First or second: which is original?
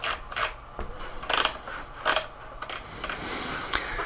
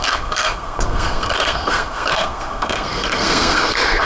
first